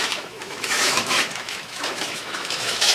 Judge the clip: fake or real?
fake